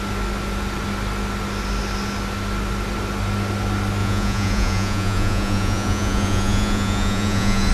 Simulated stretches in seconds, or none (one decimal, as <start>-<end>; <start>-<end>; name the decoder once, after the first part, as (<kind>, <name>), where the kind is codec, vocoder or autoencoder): 4.0-7.7 (vocoder, Vocos)

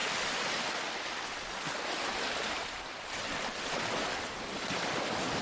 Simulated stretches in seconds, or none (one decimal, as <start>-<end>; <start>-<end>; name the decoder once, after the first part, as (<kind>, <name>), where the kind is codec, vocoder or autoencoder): none